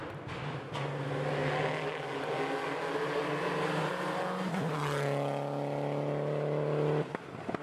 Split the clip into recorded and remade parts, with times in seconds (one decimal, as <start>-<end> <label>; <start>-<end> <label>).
0.0-7.6 recorded

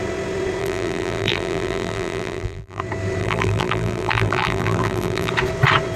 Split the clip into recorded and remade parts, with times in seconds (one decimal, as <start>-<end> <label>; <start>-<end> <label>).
0.0-0.6 recorded; 0.6-2.8 remade; 2.8-3.2 recorded; 3.2-5.3 remade; 5.3-6.0 recorded